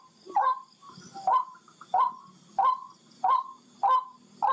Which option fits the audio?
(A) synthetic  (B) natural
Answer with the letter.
B